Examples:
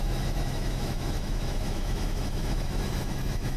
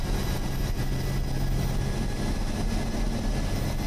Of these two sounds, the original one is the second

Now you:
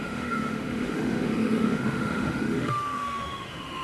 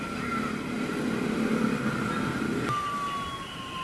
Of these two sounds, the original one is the second